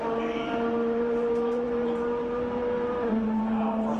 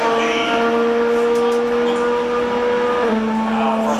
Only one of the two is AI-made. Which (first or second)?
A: first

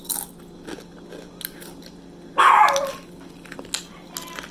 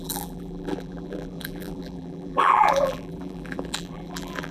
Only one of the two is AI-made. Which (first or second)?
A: second